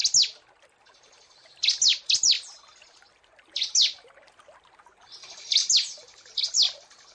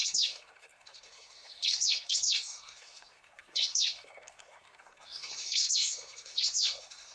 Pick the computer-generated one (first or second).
second